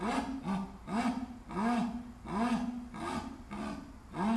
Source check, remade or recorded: recorded